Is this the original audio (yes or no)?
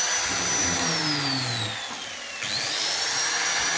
yes